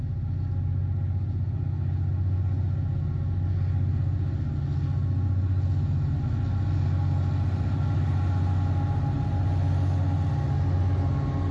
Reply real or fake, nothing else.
real